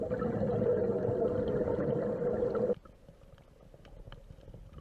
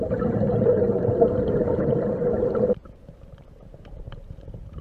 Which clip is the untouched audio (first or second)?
first